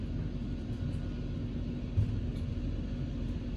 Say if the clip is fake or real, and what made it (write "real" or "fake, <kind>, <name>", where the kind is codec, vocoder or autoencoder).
real